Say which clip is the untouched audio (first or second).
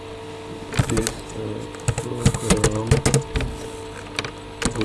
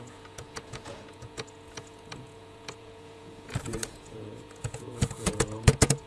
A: first